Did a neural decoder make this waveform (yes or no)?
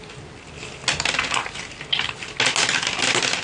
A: no